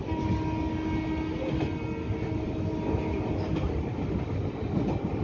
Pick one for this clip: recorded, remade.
recorded